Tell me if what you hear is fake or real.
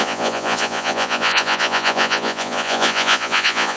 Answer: fake